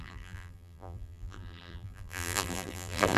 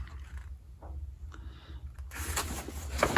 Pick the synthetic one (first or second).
first